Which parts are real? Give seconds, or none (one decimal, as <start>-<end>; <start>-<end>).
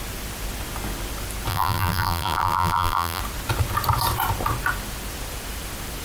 0.0-1.5; 3.2-6.0